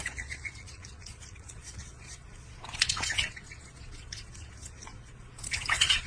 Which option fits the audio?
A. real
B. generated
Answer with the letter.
B